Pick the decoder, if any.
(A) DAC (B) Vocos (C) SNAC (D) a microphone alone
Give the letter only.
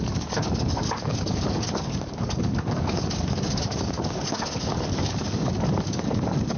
A